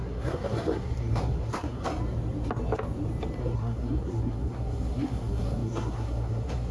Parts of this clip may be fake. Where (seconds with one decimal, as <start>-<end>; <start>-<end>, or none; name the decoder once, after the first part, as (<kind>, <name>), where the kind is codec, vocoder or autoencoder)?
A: 0.0-1.9 (codec, SNAC); 3.4-6.7